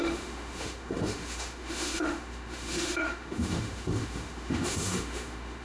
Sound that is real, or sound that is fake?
fake